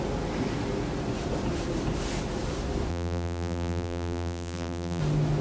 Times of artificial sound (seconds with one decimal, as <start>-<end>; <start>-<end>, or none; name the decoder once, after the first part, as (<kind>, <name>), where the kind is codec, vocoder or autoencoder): 2.9-5.0 (vocoder, BigVGAN v2)